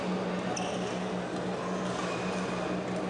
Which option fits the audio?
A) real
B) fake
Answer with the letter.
A